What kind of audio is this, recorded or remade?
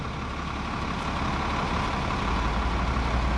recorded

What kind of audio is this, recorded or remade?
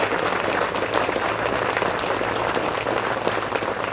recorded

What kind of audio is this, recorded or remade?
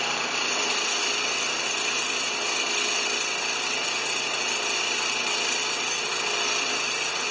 recorded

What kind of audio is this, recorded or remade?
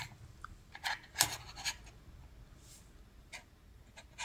recorded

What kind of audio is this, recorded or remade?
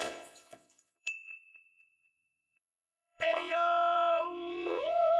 remade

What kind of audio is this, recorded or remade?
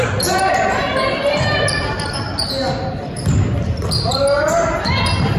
recorded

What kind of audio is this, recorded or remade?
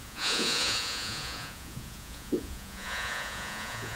remade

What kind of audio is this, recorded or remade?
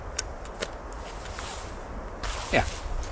recorded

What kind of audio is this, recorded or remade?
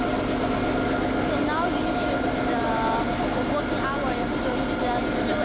recorded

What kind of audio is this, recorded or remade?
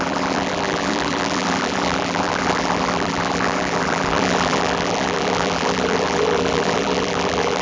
remade